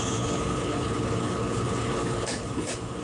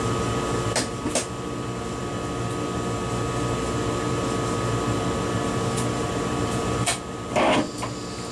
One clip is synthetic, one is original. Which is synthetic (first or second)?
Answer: first